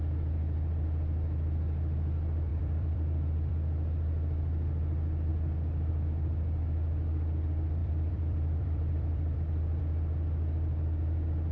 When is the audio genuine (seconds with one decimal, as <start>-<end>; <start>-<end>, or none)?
0.0-2.5; 3.5-7.8; 9.8-11.5